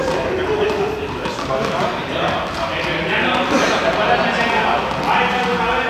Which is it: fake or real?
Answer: real